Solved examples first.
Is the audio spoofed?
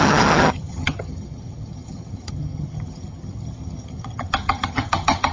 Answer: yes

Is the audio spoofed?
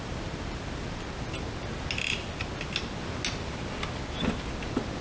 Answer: no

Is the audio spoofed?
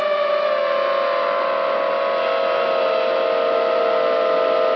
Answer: no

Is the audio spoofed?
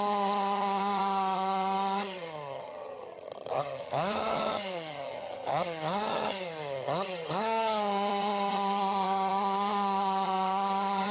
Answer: yes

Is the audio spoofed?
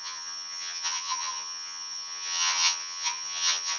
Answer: yes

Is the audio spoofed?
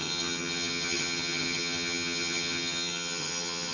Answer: yes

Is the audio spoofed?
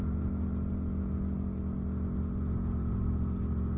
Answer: no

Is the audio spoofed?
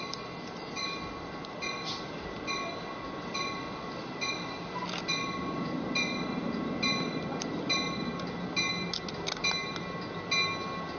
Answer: no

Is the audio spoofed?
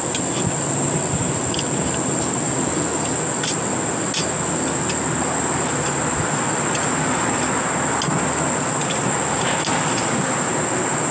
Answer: no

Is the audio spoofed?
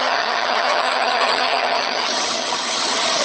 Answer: yes